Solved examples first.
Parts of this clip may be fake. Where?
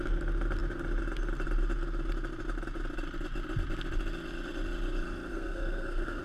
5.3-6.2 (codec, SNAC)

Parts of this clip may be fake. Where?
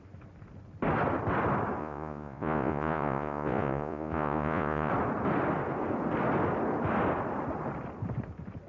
1.8-4.9 (vocoder, Vocos)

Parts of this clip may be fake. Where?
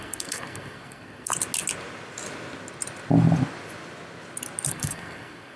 0.0-1.3 (codec, SNAC); 4.7-5.6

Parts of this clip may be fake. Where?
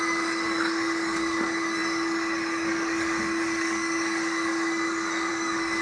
0.0-5.8 (codec, DAC)